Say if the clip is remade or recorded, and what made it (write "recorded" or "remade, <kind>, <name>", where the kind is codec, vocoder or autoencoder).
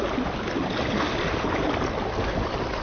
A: recorded